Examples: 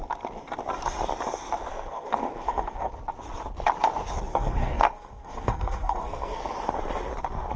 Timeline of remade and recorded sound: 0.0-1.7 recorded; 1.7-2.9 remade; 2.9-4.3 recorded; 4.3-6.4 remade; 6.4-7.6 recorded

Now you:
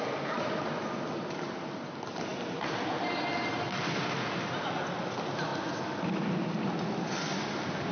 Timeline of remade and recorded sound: 0.0-7.9 recorded